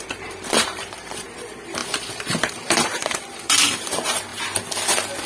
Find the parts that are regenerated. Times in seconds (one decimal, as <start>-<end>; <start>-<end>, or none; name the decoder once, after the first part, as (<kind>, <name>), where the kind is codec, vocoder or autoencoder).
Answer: 0.0-4.3 (vocoder, BigVGAN v2)